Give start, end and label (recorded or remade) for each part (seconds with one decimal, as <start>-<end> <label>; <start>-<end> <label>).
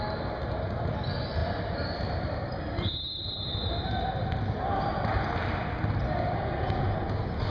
0.0-7.5 recorded